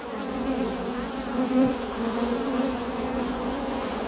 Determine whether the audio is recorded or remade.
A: remade